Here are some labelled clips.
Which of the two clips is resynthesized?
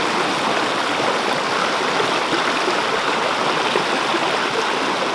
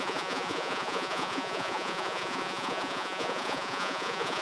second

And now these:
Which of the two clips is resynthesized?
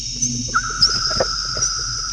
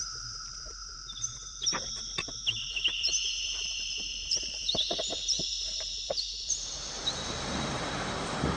second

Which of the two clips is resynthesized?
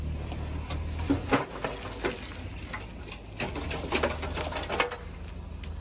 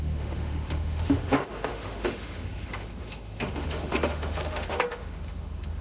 second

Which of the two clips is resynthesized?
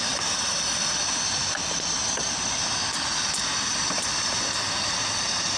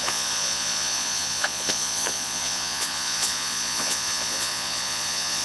second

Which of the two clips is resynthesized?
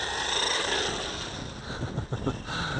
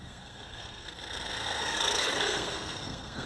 second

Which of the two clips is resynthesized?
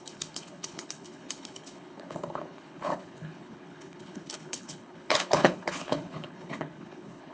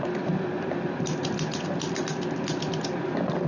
first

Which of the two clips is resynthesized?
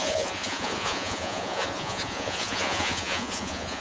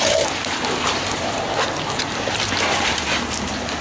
first